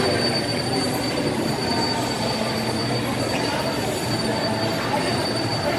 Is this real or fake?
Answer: real